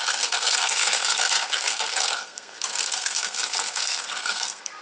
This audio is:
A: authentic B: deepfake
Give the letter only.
B